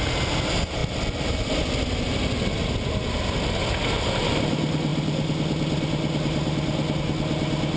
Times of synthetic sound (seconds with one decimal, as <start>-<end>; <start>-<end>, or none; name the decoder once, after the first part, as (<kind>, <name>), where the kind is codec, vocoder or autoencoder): none